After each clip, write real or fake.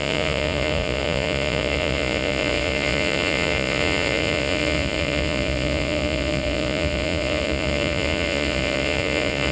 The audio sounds fake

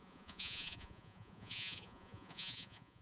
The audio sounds fake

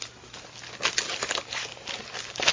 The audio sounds real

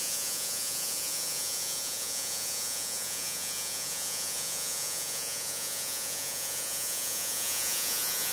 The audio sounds fake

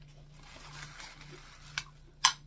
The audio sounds real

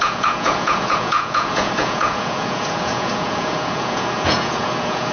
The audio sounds fake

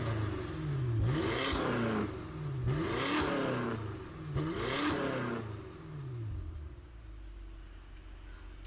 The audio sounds real